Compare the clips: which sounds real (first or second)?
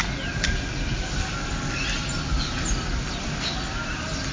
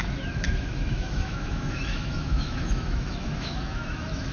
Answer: first